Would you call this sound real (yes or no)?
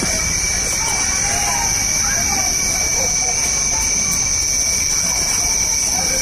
yes